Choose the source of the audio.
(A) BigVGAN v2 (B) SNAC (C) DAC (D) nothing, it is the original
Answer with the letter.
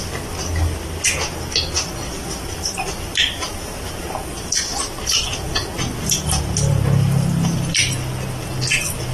D